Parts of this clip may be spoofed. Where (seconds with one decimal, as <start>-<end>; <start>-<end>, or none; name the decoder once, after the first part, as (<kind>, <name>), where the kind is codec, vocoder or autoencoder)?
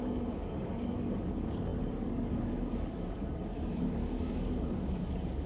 0.0-5.5 (codec, DAC)